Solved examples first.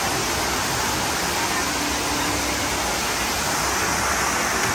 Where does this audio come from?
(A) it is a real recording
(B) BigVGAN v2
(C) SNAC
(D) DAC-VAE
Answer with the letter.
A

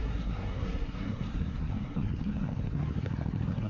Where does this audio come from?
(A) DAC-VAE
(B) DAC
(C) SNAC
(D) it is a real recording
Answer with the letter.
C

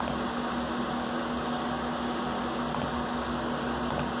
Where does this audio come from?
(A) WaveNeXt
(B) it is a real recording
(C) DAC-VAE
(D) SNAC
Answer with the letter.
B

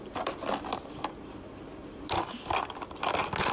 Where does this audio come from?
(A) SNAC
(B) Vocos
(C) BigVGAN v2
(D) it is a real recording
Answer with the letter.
D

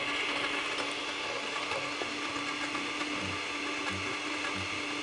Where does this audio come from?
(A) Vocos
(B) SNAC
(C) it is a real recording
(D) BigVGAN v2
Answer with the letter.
C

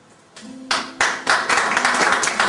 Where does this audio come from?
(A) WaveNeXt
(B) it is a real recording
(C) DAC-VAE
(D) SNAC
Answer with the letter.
B